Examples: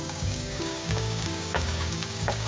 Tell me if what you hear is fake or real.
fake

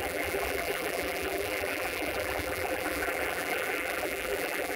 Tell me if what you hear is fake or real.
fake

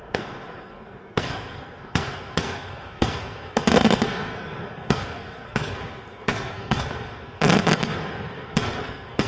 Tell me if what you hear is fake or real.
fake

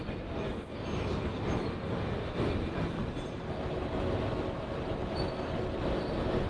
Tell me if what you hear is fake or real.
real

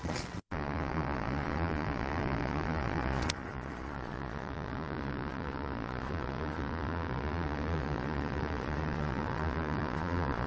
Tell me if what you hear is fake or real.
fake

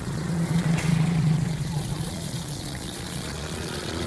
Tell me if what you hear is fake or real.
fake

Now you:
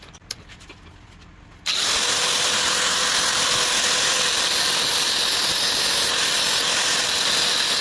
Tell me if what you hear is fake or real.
real